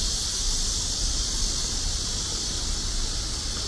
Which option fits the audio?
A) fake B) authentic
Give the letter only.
B